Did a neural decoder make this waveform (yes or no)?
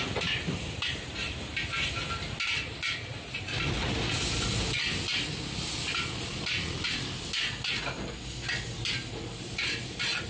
no